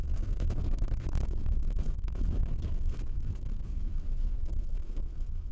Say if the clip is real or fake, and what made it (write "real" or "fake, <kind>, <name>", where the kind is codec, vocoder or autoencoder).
fake, codec, SNAC